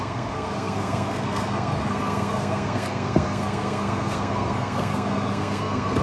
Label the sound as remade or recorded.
remade